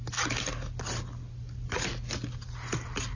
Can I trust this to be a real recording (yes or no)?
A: yes